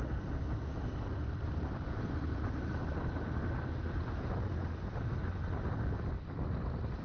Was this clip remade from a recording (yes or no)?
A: no